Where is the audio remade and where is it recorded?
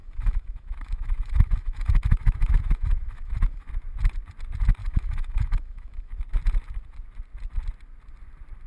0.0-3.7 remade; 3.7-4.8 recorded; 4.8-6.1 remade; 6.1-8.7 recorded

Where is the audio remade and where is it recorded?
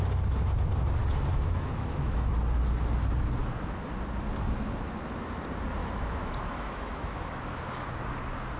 0.0-1.3 recorded; 1.3-2.3 remade; 2.3-3.4 recorded; 3.4-3.9 remade; 3.9-5.8 recorded; 5.8-8.0 remade; 8.0-8.6 recorded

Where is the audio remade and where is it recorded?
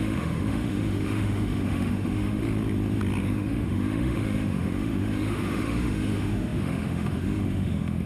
0.0-2.4 remade; 2.4-3.2 recorded; 3.2-8.1 remade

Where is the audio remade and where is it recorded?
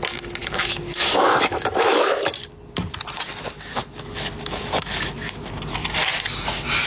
0.0-0.4 recorded; 0.4-2.5 remade; 2.5-3.7 recorded; 3.7-5.5 remade; 5.5-6.9 recorded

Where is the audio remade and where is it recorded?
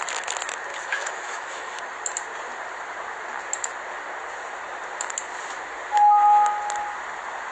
0.0-0.7 recorded; 0.7-1.8 remade; 1.8-7.5 recorded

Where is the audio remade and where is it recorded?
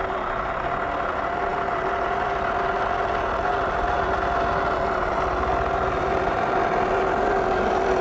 0.0-8.0 recorded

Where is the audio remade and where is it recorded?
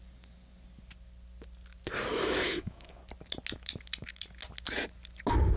0.0-2.1 recorded; 2.1-3.0 remade; 3.0-5.6 recorded